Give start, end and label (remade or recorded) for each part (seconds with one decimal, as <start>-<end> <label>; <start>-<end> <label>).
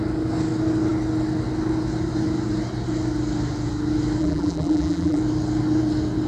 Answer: 0.0-4.2 recorded; 4.2-5.2 remade; 5.2-6.3 recorded